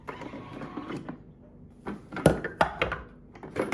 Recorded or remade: recorded